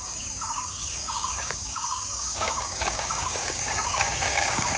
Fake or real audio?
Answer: fake